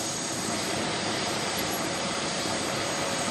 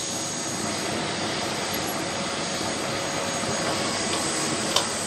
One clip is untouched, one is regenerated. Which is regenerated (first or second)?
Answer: first